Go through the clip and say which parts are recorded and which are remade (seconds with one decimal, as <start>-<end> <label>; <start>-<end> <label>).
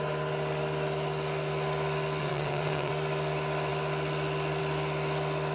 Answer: 0.0-2.2 recorded; 2.2-2.9 remade; 2.9-5.5 recorded